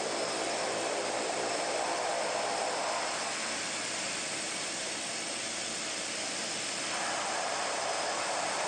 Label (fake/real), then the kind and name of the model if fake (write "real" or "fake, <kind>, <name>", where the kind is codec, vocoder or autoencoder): fake, vocoder, BigVGAN v2